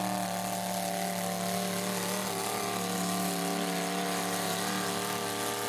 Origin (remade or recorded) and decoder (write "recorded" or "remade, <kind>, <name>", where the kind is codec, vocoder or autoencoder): recorded